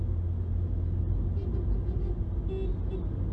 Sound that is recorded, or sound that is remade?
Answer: recorded